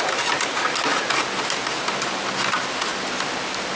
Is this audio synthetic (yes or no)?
no